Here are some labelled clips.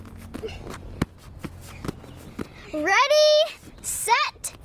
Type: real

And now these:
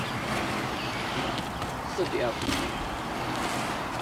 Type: real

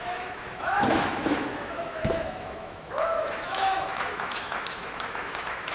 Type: fake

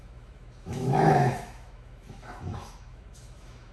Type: fake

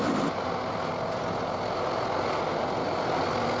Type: real